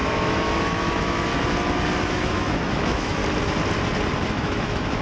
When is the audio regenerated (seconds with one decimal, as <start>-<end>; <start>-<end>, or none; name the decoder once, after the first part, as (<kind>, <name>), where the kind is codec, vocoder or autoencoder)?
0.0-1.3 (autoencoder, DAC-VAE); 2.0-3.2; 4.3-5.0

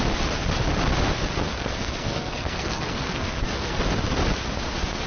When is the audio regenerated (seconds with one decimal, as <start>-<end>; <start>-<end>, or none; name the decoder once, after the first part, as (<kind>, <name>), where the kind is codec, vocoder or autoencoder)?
1.5-3.8 (codec, SNAC)

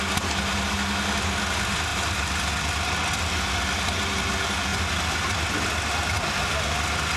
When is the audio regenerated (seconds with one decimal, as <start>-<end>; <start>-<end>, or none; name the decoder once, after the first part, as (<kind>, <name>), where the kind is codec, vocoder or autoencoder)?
1.9-2.5 (vocoder, BigVGAN v2)

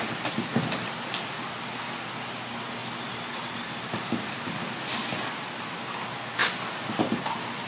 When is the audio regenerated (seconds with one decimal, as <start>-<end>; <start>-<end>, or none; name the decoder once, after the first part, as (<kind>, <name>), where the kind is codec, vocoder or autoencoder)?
2.8-4.6 (vocoder, BigVGAN v2); 6.4-7.0